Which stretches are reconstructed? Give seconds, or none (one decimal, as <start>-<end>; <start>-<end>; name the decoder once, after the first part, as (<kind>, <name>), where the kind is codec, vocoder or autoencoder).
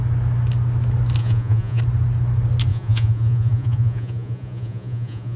1.2-1.8 (vocoder, Vocos); 2.7-5.4